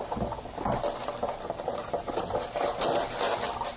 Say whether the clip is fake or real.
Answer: real